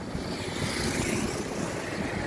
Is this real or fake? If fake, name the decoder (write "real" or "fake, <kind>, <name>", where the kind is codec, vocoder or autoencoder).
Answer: real